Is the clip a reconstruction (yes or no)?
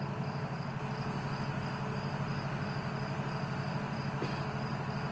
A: no